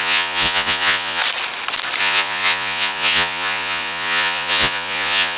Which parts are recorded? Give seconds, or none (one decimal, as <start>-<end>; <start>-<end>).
1.2-2.0